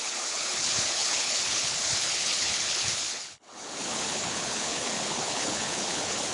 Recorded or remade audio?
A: remade